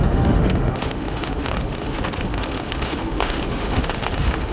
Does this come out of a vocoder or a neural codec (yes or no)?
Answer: yes